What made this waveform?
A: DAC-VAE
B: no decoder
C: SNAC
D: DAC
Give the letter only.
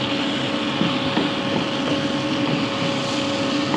B